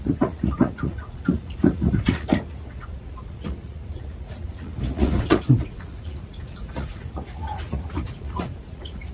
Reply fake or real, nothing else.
fake